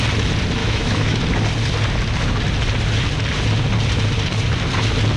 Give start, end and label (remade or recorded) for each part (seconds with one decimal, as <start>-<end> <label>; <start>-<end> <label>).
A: 0.0-0.6 recorded; 0.6-1.2 remade; 1.2-5.2 recorded

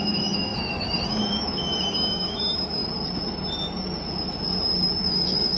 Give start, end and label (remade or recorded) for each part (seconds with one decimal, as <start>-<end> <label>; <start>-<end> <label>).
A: 0.0-2.8 remade; 2.8-5.0 recorded; 5.0-5.6 remade

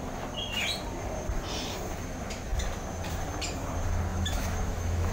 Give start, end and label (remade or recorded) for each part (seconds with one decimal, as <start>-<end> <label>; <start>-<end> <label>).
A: 0.0-4.1 recorded; 4.1-5.1 remade